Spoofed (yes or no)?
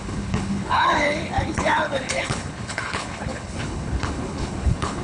yes